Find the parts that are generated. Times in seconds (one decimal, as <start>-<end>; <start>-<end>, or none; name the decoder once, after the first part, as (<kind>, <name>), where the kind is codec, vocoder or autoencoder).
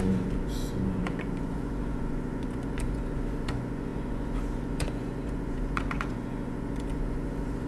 0.0-7.7 (vocoder, Vocos)